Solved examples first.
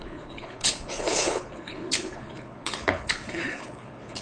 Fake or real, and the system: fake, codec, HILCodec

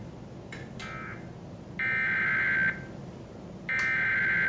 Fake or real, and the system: real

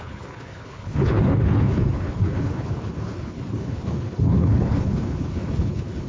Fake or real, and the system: fake, codec, HILCodec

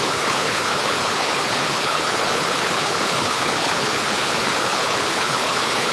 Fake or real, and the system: fake, codec, HILCodec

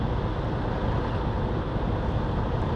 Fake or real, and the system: real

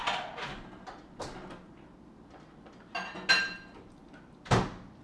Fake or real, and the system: real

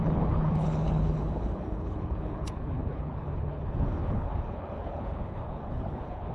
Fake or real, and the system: fake, codec, HILCodec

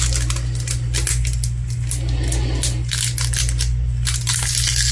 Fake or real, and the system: real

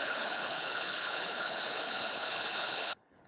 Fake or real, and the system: fake, codec, HILCodec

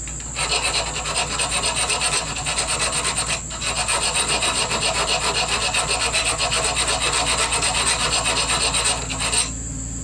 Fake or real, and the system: real